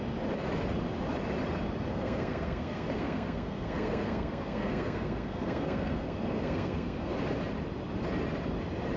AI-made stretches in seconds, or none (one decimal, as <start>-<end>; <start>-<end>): 1.9-7.1